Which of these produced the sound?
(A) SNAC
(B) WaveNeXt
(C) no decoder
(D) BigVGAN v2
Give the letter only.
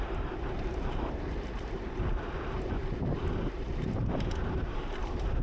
D